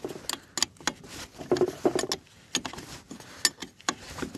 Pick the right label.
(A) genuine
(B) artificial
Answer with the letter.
A